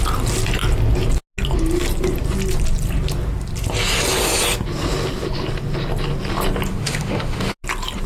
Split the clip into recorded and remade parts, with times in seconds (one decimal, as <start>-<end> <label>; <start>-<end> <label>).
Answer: 0.0-6.7 recorded; 6.7-7.5 remade; 7.5-8.1 recorded